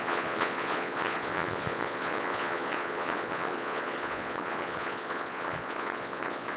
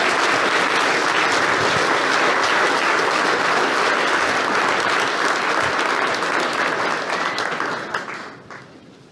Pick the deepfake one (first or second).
first